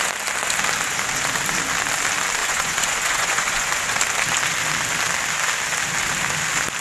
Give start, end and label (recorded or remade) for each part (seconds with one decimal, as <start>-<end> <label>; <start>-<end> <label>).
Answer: 0.0-2.4 recorded; 2.4-4.0 remade; 4.0-6.8 recorded